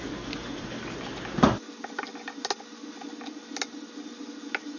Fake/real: real